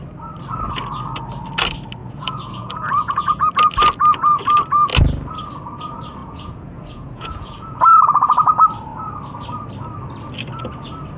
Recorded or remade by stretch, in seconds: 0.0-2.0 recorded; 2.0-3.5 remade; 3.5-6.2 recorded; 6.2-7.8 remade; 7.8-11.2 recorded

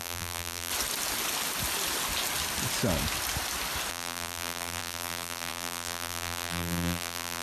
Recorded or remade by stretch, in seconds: 0.0-0.7 remade; 0.7-3.9 recorded; 3.9-7.4 remade

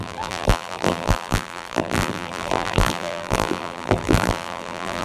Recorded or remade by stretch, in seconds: 0.0-5.0 remade

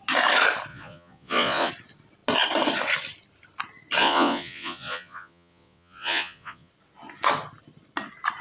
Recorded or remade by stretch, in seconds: 0.0-0.7 recorded; 0.7-1.7 remade; 1.7-4.0 recorded; 4.0-6.7 remade; 6.7-8.4 recorded

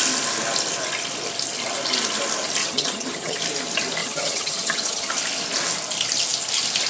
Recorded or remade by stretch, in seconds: 0.0-2.6 recorded; 2.6-3.4 remade; 3.4-4.0 recorded; 4.0-5.1 remade; 5.1-6.9 recorded